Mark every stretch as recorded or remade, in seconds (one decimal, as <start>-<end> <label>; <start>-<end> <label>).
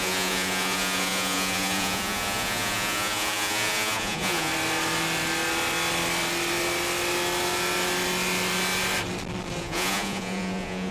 0.0-4.5 remade; 4.5-9.6 recorded; 9.6-10.9 remade